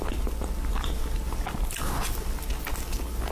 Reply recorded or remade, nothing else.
recorded